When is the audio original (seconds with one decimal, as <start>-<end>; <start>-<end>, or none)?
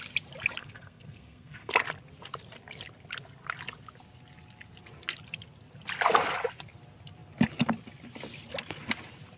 0.0-0.6; 1.7-9.4